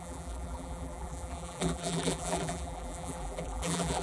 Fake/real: fake